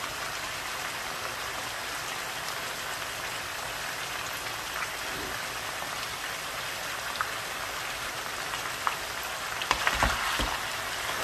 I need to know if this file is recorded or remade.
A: recorded